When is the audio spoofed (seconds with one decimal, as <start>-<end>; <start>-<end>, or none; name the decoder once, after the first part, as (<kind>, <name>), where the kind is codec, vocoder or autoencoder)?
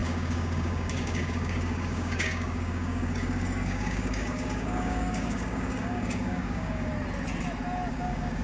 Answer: 0.0-6.9 (codec, DAC); 7.9-8.4